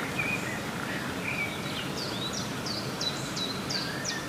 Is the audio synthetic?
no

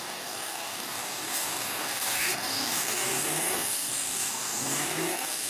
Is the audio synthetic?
yes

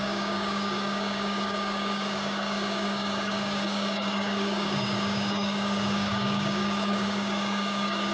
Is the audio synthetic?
yes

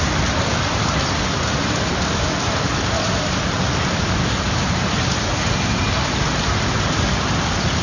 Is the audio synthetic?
no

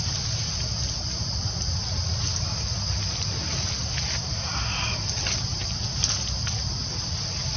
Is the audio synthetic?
no